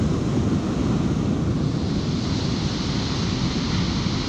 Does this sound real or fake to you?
real